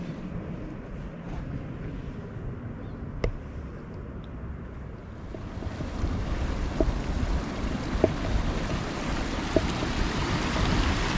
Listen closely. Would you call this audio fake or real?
real